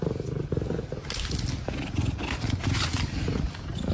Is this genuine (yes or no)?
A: yes